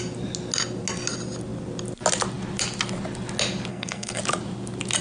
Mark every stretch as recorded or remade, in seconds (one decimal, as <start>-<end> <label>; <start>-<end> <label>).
0.0-3.7 recorded; 3.7-4.2 remade; 4.2-5.0 recorded